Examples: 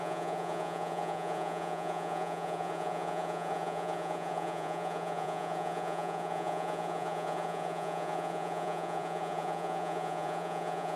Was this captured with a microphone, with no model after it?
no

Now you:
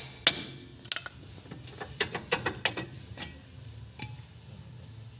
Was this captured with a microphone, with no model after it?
yes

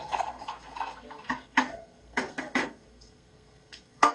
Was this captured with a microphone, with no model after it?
no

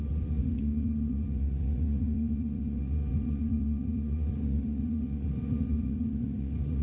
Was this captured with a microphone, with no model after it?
no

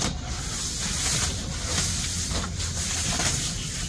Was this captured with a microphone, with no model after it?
yes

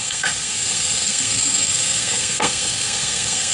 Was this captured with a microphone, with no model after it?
no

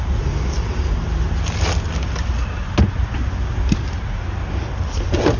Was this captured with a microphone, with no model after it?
yes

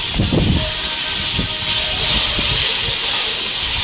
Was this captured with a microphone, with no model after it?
yes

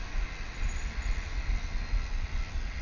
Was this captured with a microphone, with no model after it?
yes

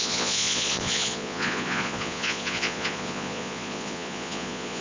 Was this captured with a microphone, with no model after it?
no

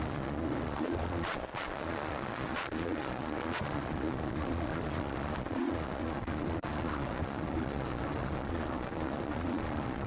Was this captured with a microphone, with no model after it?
no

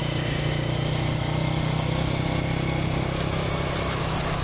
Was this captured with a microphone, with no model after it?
yes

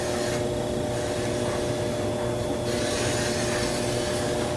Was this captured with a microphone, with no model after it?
yes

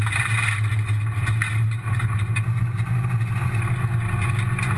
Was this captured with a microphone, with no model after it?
yes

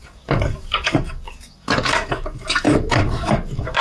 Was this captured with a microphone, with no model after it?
no